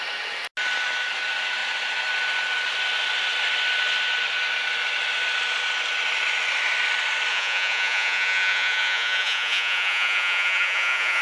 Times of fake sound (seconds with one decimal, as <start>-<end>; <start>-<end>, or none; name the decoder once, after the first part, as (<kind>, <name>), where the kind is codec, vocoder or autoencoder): 7.3-11.2 (vocoder, Vocos)